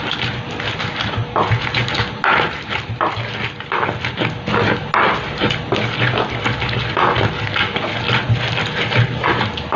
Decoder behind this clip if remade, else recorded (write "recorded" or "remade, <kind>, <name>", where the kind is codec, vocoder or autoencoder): recorded